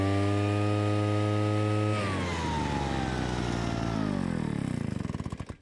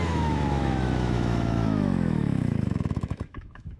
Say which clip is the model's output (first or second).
second